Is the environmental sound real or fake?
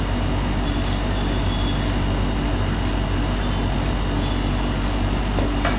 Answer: real